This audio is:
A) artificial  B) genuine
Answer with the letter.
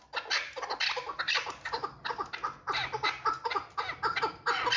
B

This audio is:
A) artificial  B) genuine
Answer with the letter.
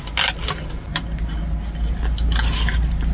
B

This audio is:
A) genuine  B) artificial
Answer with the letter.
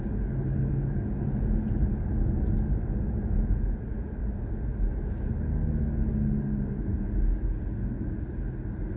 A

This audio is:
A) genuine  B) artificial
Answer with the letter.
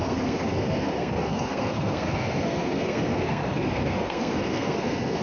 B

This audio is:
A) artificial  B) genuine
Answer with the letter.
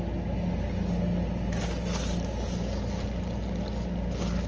B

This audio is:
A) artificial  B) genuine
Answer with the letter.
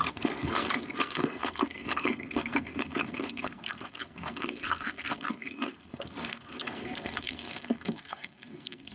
A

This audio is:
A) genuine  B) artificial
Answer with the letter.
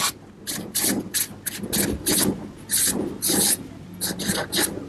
A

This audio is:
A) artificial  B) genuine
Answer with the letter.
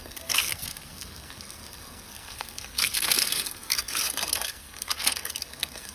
A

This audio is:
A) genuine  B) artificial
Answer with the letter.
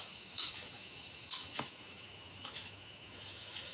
B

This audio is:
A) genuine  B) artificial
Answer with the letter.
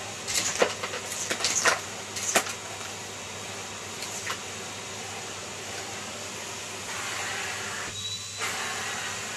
A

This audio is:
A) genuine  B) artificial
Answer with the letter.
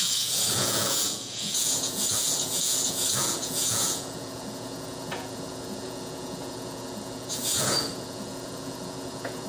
B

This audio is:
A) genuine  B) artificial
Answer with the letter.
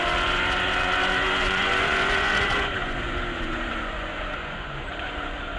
B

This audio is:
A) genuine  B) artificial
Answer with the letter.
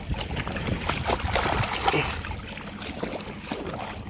A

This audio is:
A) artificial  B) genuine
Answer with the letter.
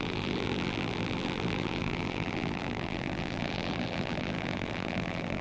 A